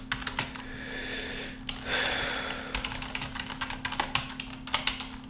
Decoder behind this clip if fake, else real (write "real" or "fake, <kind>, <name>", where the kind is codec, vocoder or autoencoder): real